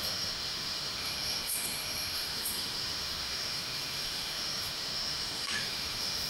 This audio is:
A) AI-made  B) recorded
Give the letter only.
A